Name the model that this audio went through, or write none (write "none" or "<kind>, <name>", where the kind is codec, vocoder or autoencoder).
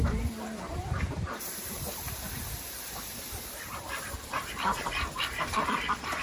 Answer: vocoder, BigVGAN v2